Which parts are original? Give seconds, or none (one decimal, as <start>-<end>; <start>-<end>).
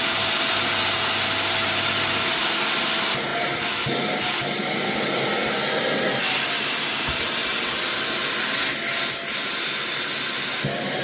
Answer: 0.0-11.0